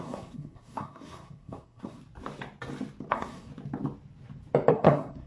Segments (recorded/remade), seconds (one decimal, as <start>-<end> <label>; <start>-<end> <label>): 0.0-2.0 remade; 2.0-3.1 recorded; 3.1-3.5 remade; 3.5-4.7 recorded; 4.7-5.3 remade